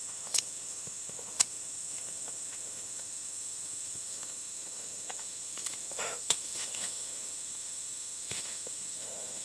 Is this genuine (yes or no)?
no